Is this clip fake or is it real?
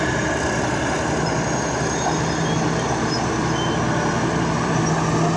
real